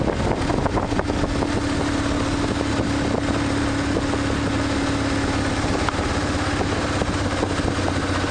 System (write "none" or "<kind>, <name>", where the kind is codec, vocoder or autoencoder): none